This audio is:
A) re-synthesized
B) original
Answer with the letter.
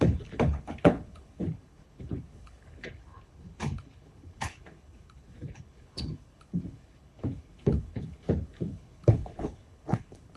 A